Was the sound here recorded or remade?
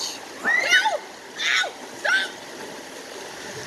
recorded